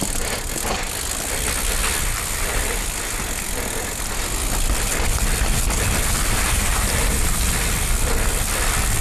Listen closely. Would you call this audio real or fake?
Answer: real